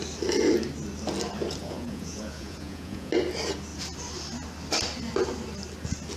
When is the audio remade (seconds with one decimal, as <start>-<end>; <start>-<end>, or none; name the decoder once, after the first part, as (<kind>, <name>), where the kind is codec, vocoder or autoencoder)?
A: 1.6-3.1 (vocoder, Vocos)